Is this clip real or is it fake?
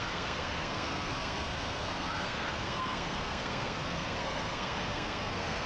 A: fake